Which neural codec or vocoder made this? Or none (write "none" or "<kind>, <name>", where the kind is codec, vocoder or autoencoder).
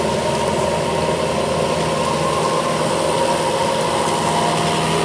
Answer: none